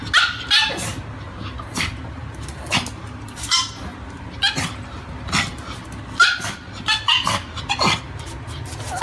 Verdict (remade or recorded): recorded